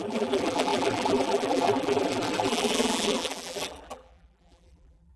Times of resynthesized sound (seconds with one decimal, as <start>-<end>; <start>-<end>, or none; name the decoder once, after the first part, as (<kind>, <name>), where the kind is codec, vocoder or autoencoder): 0.0-5.2 (vocoder, BigVGAN v2)